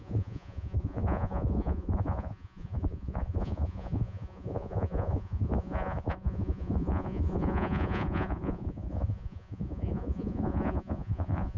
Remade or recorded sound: remade